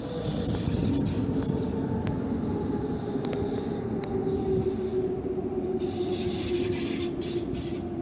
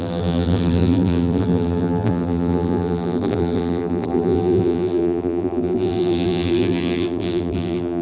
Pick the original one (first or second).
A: first